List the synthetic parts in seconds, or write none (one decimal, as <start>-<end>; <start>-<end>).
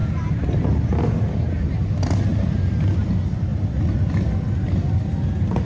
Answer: 2.3-2.8